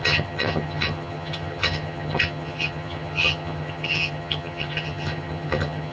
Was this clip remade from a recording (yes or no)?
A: yes